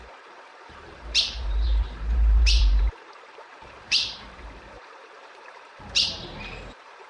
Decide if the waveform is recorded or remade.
remade